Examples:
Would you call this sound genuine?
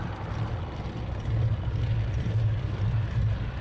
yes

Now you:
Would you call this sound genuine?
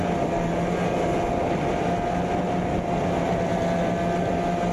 yes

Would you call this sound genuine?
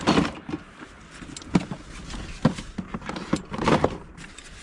yes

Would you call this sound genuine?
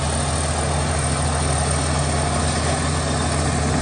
yes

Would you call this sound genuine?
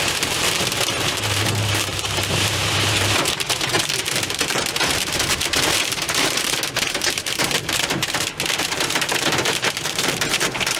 no